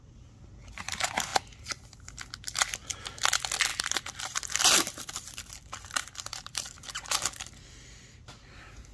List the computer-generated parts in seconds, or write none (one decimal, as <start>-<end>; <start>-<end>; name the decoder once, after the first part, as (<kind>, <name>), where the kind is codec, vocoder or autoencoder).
3.7-7.1 (vocoder, BigVGAN v2)